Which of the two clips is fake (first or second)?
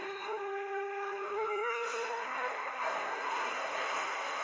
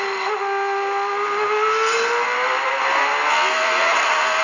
first